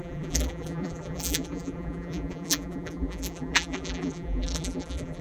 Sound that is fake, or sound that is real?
fake